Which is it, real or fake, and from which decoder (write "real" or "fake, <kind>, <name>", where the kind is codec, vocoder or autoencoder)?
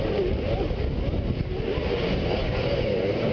real